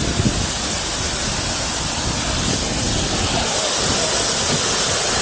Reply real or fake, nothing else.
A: real